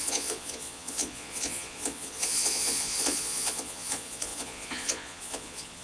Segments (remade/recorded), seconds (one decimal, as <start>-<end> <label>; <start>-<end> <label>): 0.0-5.8 remade